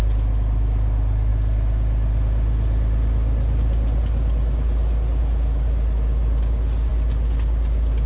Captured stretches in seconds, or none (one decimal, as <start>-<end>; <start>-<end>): 0.0-8.1